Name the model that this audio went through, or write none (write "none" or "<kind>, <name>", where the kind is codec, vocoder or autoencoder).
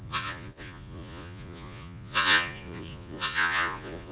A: vocoder, Vocos